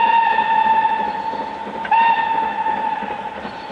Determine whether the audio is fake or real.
real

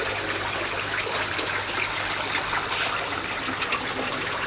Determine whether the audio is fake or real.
real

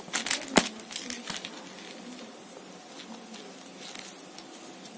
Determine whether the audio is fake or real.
real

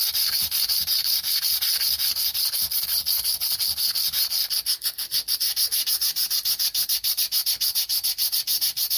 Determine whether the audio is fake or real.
real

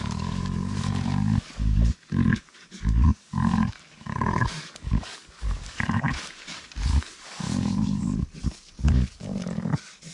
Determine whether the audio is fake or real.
fake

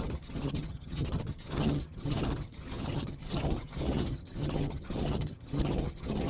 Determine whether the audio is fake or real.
fake